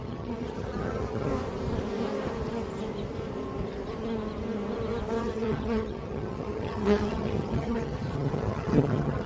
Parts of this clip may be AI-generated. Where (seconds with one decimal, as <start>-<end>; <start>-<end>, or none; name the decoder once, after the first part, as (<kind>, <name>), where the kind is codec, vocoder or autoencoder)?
0.0-1.3 (vocoder, HiFi-GAN); 5.2-9.3